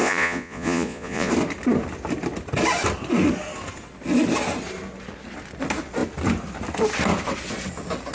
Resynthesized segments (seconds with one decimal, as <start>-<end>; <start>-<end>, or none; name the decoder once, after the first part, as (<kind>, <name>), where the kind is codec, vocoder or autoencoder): 0.0-1.3 (vocoder, Vocos)